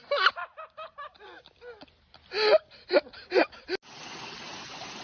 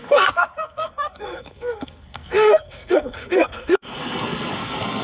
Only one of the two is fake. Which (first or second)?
second